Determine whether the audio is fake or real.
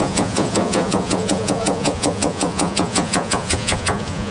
fake